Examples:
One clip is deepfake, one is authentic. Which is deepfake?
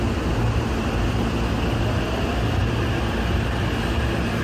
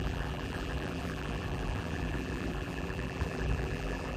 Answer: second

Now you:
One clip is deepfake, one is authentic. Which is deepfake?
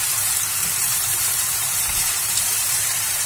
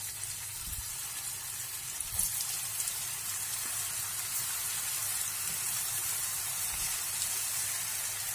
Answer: first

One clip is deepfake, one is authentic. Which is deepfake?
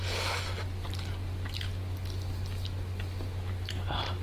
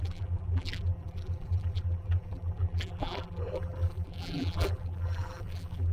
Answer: second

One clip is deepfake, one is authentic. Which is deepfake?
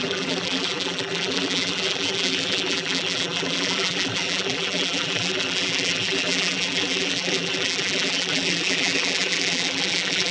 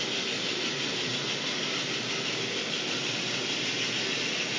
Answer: first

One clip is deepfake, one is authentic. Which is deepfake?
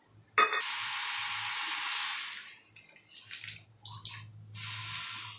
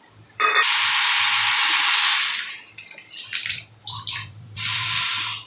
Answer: second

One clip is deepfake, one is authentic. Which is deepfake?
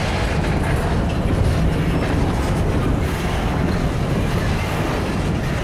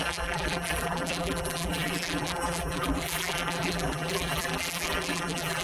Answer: second